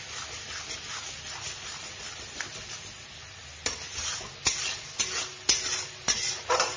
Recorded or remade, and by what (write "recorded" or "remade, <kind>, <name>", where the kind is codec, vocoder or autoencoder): recorded